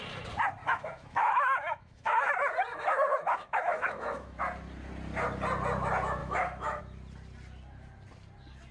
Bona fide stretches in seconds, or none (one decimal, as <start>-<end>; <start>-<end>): 0.0-0.6; 2.3-2.7; 4.4-6.2; 6.8-8.7